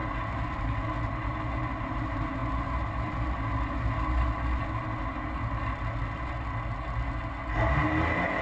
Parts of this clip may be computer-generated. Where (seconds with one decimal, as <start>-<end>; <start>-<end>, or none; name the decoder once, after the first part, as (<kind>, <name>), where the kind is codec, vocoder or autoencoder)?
none